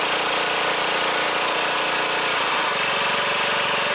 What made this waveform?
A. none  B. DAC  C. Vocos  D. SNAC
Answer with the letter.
A